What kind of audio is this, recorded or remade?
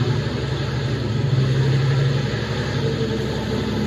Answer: recorded